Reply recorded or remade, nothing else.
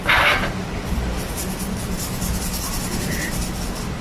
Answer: recorded